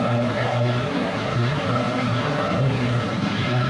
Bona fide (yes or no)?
no